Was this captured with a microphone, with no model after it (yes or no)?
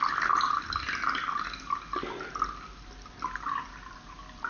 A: yes